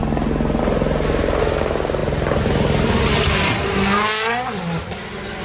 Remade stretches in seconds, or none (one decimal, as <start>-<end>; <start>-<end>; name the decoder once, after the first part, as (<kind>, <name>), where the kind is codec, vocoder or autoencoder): none